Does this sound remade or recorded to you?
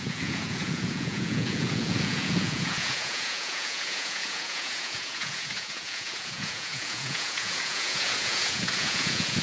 remade